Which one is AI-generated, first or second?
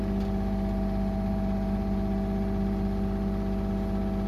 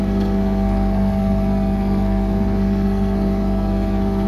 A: second